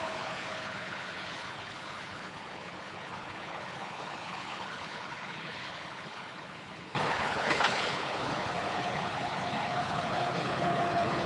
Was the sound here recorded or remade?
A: remade